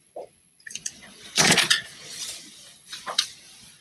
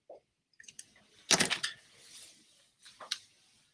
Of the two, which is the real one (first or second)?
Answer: second